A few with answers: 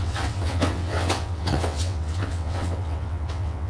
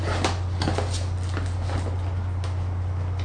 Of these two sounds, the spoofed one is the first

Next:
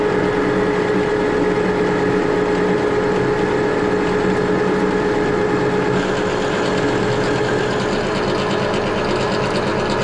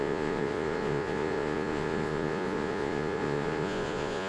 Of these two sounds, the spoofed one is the second